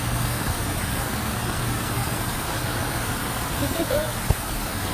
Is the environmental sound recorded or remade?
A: remade